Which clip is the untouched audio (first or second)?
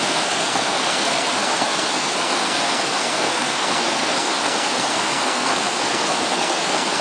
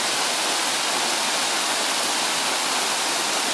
second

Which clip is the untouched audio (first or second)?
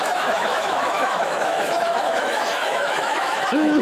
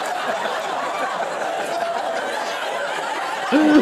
second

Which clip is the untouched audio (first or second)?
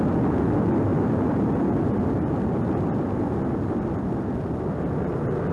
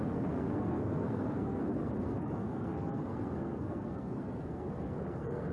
first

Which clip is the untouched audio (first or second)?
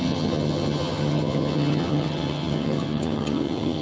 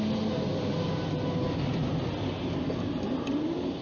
second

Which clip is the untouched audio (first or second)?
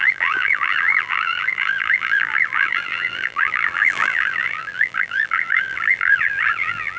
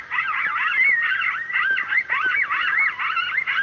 second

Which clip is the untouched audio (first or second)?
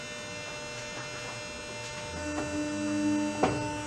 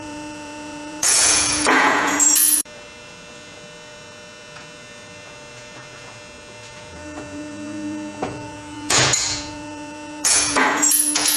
first